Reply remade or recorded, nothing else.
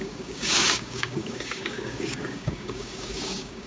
remade